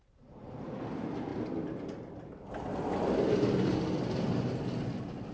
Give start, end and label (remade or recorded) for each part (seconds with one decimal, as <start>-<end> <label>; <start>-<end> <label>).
0.0-5.3 recorded